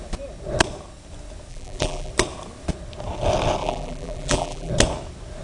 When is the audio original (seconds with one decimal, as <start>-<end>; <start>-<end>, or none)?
0.0-1.5; 2.1-3.6; 4.7-5.4